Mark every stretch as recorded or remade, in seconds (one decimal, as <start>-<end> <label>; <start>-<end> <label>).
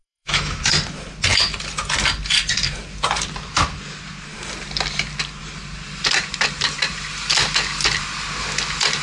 0.0-0.6 remade; 0.6-9.0 recorded